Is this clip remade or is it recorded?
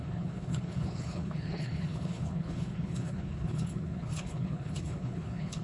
remade